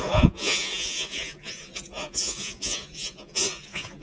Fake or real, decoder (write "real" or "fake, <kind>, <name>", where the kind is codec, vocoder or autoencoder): fake, vocoder, Vocos